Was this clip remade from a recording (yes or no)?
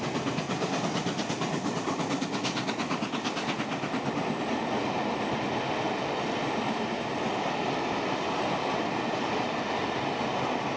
no